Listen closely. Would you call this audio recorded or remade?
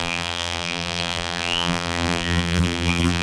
remade